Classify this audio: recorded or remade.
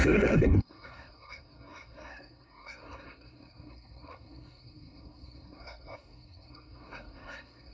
remade